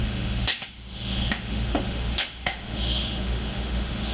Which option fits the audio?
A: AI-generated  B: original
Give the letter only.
A